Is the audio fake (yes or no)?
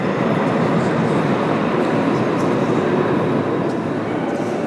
no